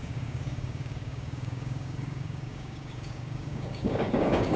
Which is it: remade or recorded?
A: remade